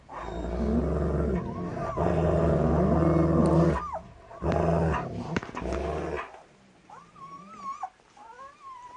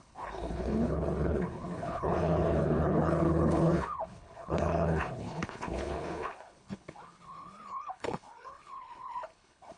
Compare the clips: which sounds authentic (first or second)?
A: first